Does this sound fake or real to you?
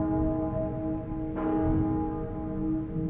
real